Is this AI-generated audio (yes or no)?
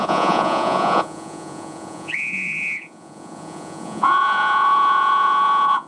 yes